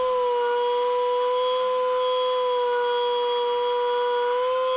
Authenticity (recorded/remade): recorded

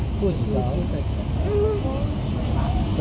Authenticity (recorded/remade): recorded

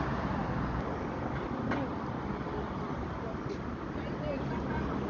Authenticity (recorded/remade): recorded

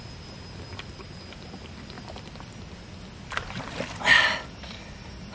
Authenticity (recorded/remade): recorded